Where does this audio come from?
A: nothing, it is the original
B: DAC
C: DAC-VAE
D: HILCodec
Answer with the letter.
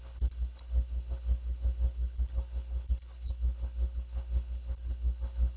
D